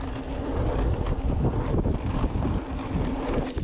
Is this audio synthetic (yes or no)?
no